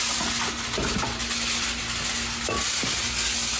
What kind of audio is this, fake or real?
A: real